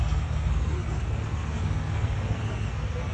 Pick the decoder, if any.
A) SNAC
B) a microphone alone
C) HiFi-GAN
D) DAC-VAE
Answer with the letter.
A